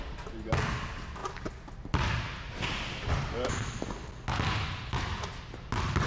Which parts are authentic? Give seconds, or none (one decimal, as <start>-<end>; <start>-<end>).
0.0-6.1